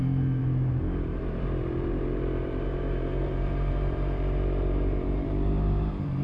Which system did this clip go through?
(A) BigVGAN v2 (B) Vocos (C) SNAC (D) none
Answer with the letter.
A